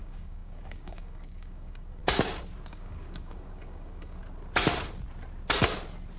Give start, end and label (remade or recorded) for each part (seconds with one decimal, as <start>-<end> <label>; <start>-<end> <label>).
0.0-2.0 remade; 2.0-2.7 recorded; 2.7-4.2 remade; 4.2-6.2 recorded